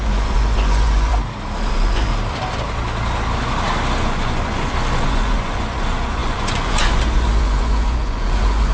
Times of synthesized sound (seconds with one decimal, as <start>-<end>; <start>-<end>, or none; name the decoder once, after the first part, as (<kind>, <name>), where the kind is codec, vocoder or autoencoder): 0.0-1.1 (vocoder, Vocos); 1.7-2.1; 4.0-8.7